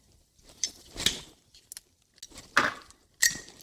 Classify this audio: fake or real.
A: real